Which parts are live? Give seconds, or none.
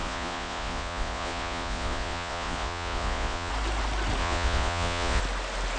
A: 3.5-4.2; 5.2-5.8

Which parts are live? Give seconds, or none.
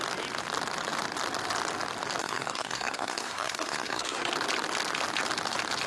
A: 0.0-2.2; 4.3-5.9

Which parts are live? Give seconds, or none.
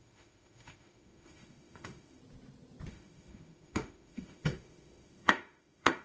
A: 2.2-2.9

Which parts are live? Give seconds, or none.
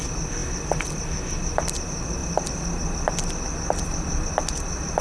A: 0.0-5.0